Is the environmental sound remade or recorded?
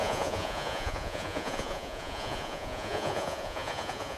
remade